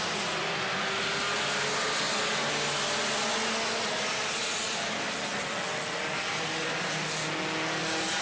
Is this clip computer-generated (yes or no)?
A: no